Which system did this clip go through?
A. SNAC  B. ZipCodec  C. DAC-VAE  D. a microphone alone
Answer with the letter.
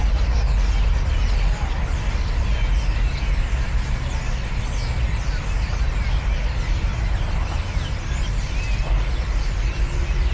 D